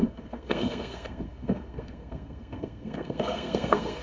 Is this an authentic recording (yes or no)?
no